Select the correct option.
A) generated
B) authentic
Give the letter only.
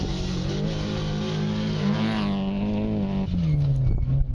B